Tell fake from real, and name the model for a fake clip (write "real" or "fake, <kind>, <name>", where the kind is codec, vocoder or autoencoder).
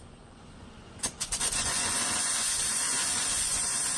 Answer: fake, vocoder, Vocos